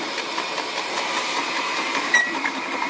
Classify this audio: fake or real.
fake